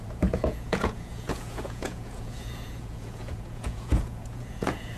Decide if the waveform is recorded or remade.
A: remade